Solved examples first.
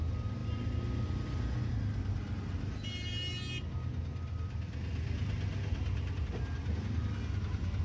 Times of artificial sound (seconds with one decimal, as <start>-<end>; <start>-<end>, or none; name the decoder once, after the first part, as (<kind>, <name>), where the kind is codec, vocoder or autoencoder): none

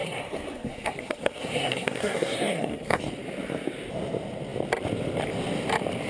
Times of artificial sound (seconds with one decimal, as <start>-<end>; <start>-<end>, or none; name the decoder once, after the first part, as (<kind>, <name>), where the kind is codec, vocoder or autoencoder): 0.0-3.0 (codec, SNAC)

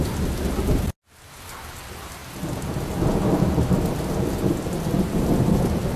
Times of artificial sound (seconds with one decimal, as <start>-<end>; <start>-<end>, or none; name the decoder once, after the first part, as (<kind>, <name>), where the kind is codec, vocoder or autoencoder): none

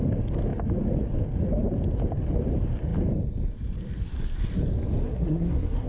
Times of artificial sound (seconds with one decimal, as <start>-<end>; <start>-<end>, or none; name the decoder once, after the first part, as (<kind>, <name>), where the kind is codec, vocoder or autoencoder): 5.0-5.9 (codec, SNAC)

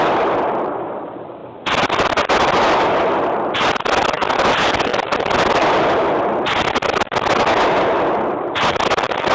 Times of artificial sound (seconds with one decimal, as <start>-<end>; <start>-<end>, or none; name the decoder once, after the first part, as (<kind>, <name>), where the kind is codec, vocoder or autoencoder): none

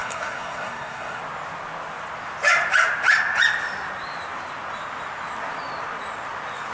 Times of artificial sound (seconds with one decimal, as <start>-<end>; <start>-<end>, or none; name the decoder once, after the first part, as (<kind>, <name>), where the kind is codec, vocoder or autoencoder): 0.0-1.2 (codec, SNAC)

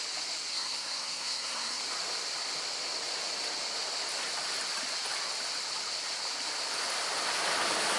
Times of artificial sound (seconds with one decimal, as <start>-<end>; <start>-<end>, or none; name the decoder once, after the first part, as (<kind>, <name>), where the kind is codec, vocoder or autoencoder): 0.5-1.8 (codec, SNAC)

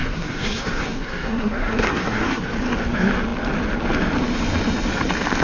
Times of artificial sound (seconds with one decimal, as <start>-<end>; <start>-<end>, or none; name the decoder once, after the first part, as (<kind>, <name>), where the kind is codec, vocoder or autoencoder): 0.0-2.4 (codec, SNAC)